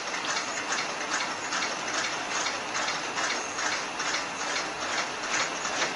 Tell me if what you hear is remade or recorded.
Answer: recorded